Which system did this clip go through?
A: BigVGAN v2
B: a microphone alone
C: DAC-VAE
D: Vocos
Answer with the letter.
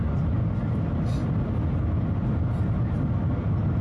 B